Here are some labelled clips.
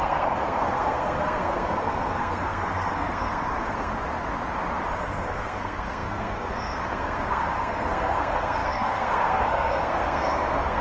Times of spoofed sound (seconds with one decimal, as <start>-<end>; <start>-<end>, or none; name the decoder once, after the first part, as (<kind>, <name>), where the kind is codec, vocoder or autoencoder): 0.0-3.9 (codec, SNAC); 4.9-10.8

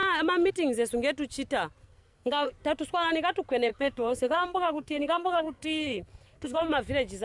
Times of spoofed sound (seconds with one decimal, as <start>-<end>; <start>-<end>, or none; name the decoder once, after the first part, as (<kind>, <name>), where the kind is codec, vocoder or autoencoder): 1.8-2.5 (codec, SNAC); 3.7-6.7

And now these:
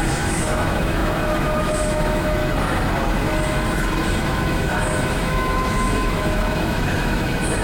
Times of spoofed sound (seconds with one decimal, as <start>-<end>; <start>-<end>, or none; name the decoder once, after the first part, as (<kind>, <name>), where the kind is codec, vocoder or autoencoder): 0.0-2.4 (autoencoder, DAC-VAE); 4.2-7.6

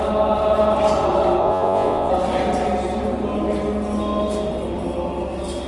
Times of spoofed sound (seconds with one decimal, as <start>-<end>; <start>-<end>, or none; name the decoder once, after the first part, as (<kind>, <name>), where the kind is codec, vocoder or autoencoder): 1.4-2.1 (vocoder, Vocos)

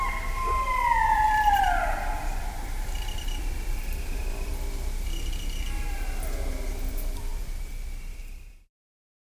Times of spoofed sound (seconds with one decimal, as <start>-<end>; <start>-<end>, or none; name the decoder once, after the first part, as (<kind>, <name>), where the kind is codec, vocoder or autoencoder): 0.0-4.5 (vocoder, BigVGAN v2); 6.7-9.3

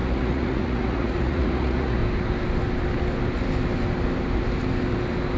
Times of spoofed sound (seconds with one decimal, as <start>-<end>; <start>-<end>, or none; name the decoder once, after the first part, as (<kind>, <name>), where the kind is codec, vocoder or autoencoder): 0.0-2.0 (vocoder, Vocos)

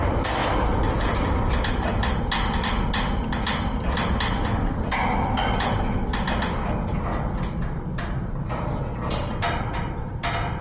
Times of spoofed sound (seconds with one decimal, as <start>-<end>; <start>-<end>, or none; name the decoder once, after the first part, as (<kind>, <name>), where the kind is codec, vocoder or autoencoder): none

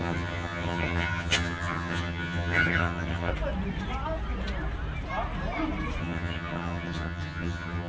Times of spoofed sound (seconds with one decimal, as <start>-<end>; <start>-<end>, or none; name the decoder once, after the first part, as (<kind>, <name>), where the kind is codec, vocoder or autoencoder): 0.0-3.3 (vocoder, HiFi-GAN); 6.0-7.9